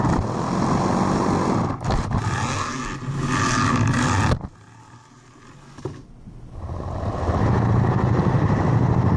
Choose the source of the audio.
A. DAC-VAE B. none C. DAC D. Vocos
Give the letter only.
B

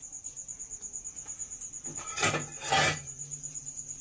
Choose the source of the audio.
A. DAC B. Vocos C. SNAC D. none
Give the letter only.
B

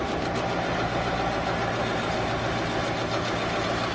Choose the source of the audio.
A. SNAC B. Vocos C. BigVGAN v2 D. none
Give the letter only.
D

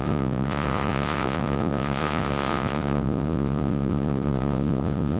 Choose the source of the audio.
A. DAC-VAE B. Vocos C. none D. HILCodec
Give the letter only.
B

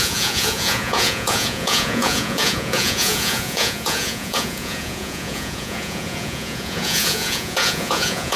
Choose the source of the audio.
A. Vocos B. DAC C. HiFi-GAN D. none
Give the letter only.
A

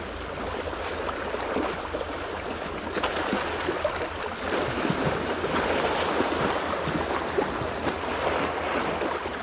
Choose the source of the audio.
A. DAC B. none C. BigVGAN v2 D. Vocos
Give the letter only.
B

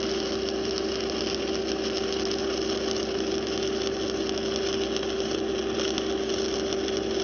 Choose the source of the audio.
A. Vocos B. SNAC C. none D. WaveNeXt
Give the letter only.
C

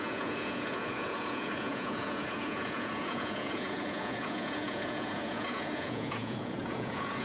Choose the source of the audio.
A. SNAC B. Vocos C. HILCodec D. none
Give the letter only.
B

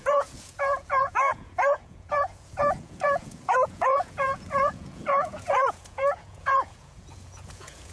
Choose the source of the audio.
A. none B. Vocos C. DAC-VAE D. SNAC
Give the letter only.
B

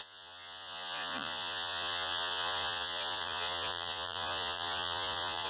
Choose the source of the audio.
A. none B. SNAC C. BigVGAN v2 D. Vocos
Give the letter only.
D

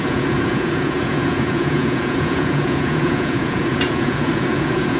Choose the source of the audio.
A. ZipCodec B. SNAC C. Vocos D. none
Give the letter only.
C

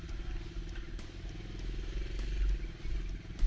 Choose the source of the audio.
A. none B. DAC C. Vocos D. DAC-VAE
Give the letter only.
A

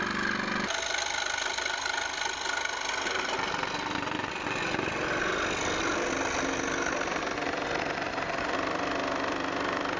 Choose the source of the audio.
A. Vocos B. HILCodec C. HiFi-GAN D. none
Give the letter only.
D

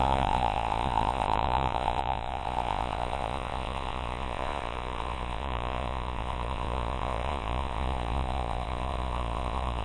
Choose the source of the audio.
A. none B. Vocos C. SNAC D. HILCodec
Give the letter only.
B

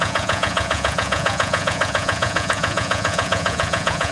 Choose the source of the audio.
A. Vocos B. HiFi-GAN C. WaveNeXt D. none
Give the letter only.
A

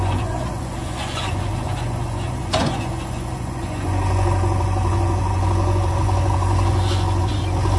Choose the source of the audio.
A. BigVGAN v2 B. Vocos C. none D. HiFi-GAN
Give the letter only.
B